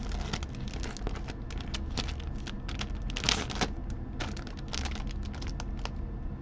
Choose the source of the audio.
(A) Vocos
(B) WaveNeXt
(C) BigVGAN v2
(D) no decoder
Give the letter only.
D